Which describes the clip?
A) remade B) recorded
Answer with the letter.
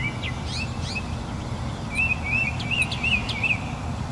B